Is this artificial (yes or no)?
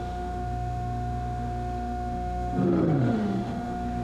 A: yes